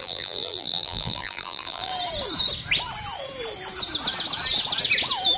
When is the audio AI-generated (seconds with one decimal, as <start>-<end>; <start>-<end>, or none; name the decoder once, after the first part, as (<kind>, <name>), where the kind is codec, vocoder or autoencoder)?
0.0-1.9 (vocoder, BigVGAN v2)